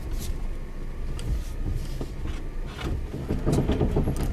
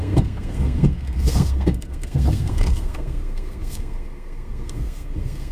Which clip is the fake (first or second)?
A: second